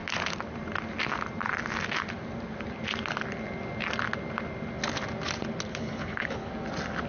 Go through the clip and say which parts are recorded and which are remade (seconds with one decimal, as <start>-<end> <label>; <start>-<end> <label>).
0.0-5.7 recorded; 5.7-6.5 remade; 6.5-7.1 recorded